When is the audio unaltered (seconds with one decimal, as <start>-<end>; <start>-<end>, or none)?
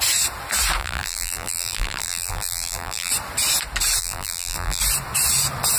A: 0.0-0.8; 3.1-4.0; 4.8-5.8